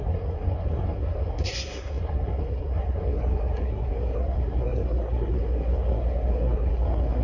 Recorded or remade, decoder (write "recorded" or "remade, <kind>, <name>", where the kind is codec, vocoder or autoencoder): remade, codec, SNAC